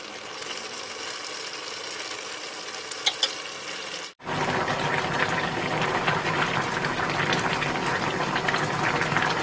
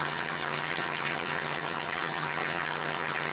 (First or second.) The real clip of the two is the first